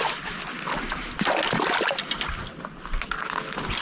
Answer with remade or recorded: recorded